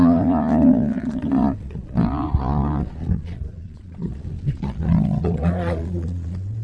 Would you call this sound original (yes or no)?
no